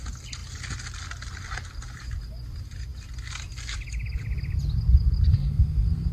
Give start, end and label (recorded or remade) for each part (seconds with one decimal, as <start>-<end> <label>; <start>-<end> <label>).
0.0-5.3 recorded; 5.3-6.1 remade